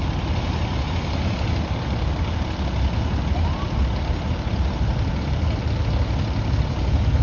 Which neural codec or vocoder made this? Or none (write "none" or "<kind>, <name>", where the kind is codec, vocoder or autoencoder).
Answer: none